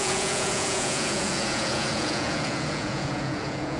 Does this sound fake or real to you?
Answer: fake